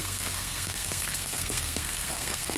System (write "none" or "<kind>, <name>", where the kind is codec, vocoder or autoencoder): codec, SNAC